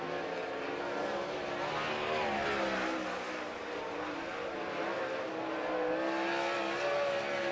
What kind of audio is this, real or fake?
real